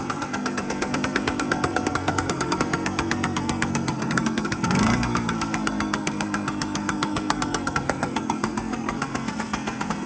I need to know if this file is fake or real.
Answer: fake